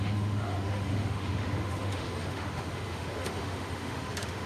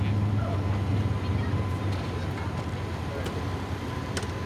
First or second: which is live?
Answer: second